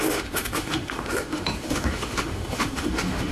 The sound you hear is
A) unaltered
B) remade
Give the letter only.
B